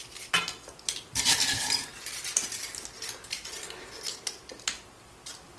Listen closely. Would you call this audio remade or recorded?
recorded